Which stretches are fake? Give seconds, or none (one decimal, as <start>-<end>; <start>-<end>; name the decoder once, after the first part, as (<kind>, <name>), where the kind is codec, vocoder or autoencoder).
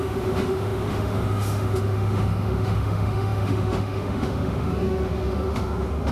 0.0-6.1 (autoencoder, DAC-VAE)